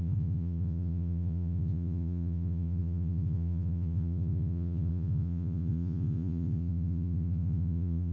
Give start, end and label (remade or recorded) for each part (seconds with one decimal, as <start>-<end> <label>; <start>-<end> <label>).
0.0-8.1 remade